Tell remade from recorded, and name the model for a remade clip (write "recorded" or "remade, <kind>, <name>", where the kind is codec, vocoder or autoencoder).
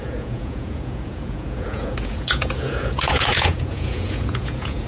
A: remade, vocoder, Vocos